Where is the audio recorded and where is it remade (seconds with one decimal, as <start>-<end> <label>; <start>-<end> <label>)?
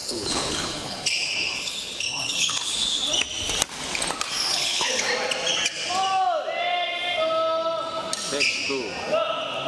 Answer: 0.0-3.0 remade; 3.0-4.5 recorded; 4.5-5.1 remade; 5.1-9.7 recorded